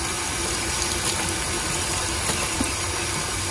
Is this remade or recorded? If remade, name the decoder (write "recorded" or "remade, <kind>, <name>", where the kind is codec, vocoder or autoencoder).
remade, vocoder, BigVGAN v2